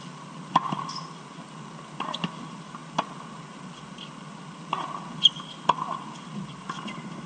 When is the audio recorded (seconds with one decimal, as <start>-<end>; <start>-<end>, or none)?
0.0-7.3